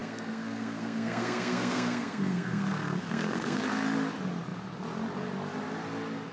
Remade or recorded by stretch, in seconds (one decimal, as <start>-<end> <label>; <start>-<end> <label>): 0.0-3.6 remade; 3.6-6.3 recorded